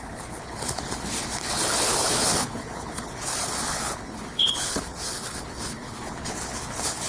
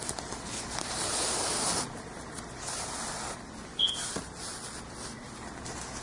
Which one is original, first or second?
second